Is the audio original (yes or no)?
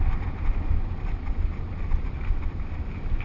yes